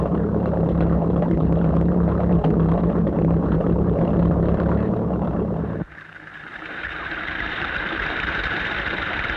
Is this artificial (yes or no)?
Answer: yes